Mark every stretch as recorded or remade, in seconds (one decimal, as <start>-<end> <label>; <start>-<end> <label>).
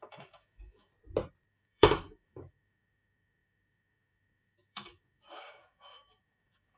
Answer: 0.0-0.9 remade; 0.9-1.5 recorded; 1.5-6.8 remade